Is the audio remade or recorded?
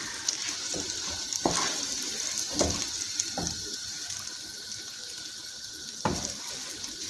recorded